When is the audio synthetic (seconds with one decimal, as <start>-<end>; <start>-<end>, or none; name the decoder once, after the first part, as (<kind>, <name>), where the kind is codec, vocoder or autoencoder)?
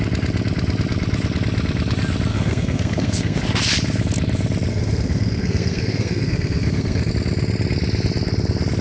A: 2.3-3.4 (codec, SNAC); 4.7-7.1